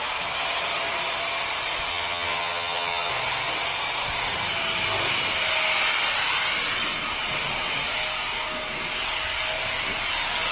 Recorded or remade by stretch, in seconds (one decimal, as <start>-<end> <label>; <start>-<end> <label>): 0.0-1.9 recorded; 1.9-3.1 remade; 3.1-10.5 recorded